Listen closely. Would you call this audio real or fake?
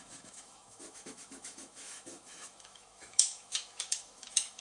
fake